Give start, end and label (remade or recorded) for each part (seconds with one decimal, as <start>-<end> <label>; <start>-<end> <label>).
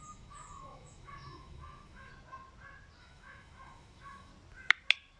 0.0-2.1 remade; 2.1-3.0 recorded; 3.0-4.3 remade; 4.3-5.2 recorded